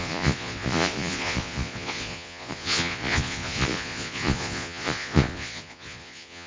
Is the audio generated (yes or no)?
yes